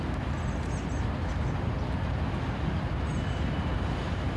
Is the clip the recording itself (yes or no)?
yes